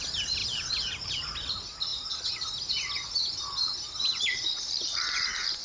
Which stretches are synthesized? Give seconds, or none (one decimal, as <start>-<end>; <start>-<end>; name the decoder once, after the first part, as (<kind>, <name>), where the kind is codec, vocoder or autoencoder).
none